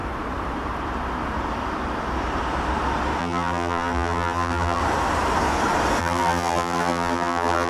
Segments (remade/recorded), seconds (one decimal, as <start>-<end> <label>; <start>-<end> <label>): 0.0-3.2 recorded; 3.2-4.8 remade; 4.8-6.0 recorded; 6.0-7.7 remade